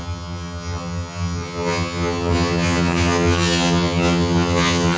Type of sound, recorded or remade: remade